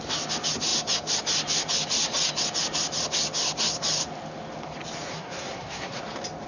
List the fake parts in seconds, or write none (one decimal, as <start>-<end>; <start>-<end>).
5.1-6.0